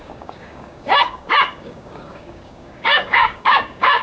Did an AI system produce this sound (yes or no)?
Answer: yes